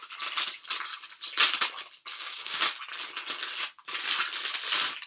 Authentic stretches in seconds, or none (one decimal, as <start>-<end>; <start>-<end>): 0.0-2.1; 2.6-5.1